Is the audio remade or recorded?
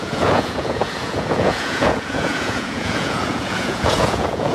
remade